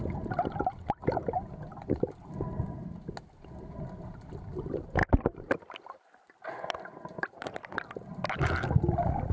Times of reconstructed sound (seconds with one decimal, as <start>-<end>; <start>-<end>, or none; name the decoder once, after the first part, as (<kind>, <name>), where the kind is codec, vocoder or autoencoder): 1.7-2.9 (vocoder, BigVGAN v2); 5.0-8.3